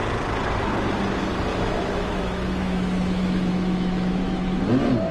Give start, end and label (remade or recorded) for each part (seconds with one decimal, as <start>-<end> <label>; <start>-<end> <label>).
0.0-1.5 recorded; 1.5-4.6 remade; 4.6-5.1 recorded

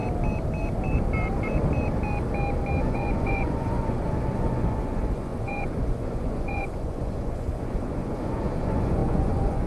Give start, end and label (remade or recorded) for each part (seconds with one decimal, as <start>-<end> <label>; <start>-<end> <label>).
0.0-2.8 recorded; 2.8-9.7 remade

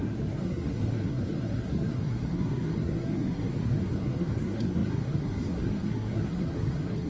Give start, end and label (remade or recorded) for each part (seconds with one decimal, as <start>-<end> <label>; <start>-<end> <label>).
0.0-7.1 remade

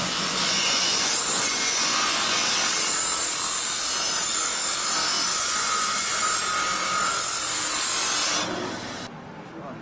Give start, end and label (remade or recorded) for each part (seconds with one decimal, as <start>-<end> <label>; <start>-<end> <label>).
0.0-2.5 remade; 2.5-5.3 recorded; 5.3-6.3 remade; 6.3-9.8 recorded

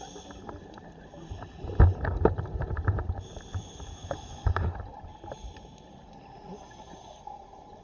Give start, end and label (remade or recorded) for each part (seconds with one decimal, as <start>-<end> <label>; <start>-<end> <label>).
0.0-3.5 recorded; 3.5-4.5 remade; 4.5-7.8 recorded